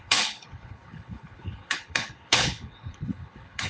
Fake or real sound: fake